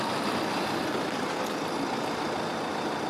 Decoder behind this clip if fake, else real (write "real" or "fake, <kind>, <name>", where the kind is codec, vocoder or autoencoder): fake, vocoder, BigVGAN v2